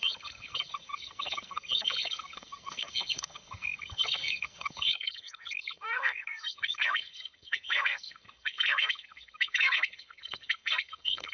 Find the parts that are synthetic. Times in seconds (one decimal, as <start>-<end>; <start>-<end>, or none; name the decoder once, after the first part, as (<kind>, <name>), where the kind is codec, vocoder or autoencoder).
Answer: 0.0-11.3 (codec, SNAC)